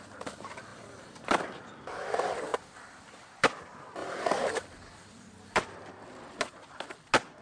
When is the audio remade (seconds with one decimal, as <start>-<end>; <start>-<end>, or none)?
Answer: 0.7-1.6; 4.0-5.9